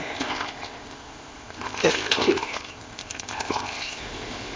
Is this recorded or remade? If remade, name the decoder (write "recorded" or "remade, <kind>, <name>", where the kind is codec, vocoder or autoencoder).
remade, codec, ZipCodec